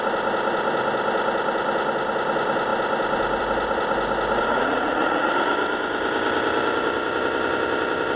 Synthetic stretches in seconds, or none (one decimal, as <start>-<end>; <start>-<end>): 4.5-5.3